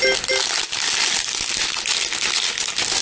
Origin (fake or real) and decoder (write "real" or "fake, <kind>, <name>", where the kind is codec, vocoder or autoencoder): real